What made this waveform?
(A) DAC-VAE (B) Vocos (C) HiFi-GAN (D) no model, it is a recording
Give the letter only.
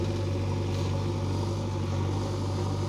D